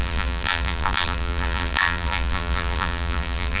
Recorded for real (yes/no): no